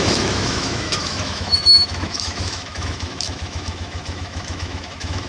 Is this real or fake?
fake